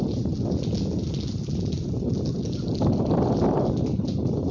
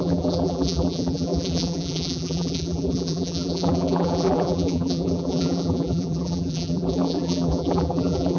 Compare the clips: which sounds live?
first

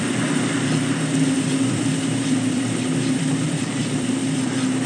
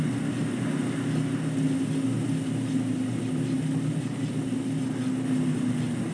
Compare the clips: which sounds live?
second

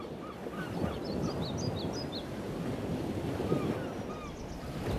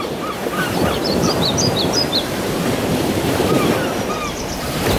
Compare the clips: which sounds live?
first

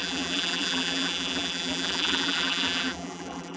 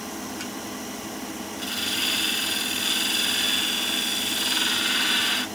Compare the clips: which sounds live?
second